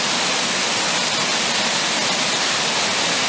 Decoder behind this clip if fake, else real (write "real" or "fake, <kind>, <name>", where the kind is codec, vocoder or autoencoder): real